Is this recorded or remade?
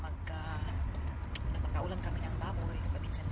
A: recorded